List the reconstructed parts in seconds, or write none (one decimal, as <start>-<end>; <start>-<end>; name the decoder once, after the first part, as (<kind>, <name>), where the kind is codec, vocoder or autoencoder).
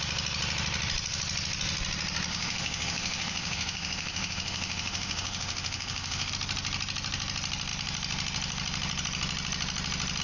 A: 2.3-6.3 (autoencoder, DAC-VAE)